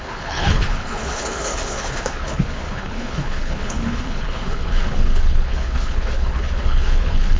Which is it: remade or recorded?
remade